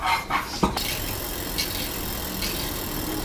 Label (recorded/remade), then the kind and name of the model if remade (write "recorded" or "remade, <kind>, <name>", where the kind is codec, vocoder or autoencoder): recorded